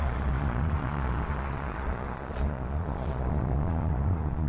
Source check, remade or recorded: remade